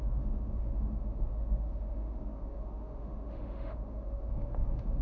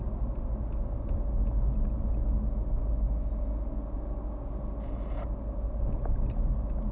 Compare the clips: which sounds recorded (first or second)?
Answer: second